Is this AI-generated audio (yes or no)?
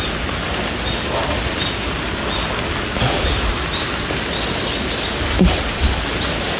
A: no